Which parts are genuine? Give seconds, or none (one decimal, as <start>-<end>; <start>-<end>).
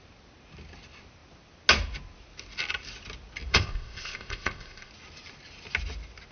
0.0-3.5; 4.9-6.3